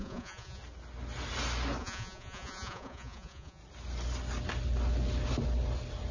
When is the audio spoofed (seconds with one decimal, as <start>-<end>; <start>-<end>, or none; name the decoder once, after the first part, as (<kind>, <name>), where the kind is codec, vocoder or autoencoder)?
0.0-0.6 (vocoder, Vocos); 1.8-3.6

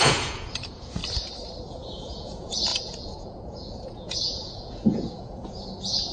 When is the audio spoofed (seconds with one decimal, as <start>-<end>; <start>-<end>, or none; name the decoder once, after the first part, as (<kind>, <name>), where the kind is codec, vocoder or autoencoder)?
0.0-1.0 (vocoder, Vocos); 1.7-6.1